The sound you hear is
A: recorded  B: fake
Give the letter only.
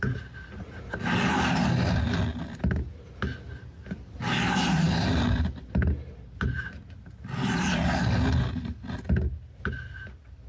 A